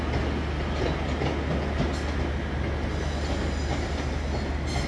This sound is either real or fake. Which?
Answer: real